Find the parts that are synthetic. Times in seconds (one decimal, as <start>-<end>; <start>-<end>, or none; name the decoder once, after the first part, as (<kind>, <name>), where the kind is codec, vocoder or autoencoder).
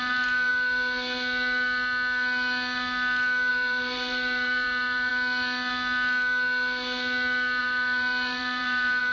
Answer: 0.0-0.5 (vocoder, BigVGAN v2); 3.5-5.1; 7.6-9.1